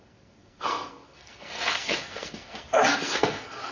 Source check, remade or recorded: remade